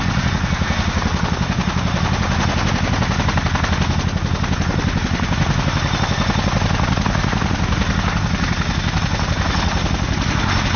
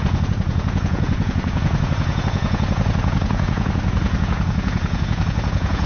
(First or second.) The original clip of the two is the first